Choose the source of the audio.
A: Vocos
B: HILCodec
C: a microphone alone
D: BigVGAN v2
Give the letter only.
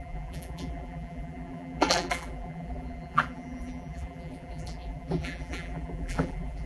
D